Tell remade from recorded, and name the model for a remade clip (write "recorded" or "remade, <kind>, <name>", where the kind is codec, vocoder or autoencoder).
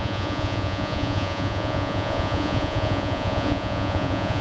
remade, vocoder, Vocos